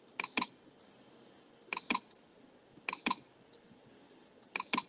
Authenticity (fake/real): real